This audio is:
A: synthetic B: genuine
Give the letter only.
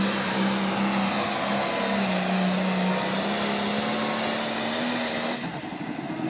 B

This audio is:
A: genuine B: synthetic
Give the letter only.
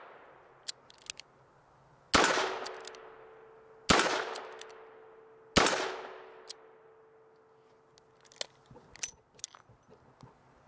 A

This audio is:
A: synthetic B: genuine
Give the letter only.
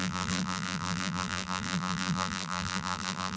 A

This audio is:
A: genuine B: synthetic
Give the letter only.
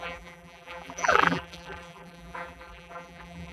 B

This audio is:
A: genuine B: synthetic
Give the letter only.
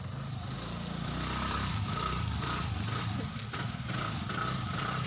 B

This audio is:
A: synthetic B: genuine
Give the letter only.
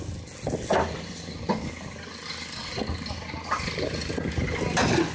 B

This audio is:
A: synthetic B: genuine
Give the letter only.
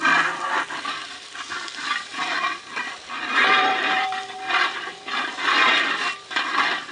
A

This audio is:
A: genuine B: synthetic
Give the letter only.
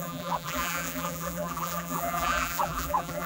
B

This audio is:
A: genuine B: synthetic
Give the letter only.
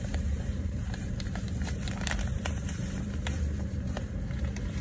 B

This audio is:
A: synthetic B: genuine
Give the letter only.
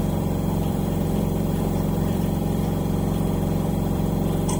A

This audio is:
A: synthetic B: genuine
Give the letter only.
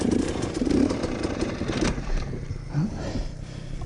A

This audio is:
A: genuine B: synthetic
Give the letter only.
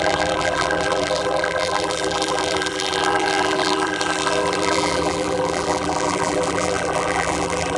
B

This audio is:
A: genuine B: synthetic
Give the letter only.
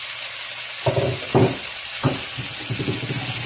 A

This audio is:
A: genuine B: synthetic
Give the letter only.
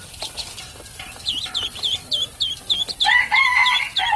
B